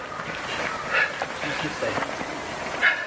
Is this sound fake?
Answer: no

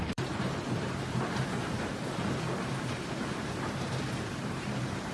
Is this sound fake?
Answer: yes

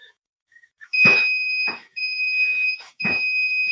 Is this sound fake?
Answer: yes